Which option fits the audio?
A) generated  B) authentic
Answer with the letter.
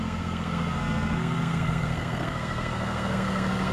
A